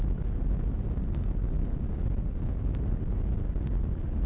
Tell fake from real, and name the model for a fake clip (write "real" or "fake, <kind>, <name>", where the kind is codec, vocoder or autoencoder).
real